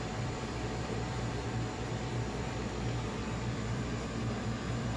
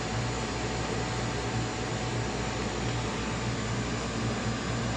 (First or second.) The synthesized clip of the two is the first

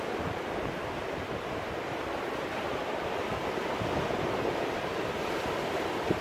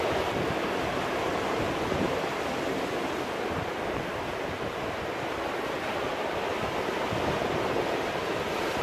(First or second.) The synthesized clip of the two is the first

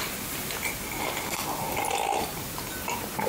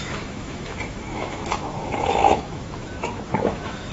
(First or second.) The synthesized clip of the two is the second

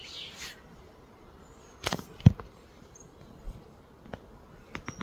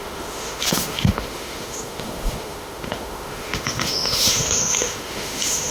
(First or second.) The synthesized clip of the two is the second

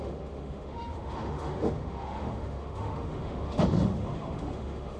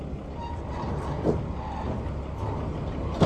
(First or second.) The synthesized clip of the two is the first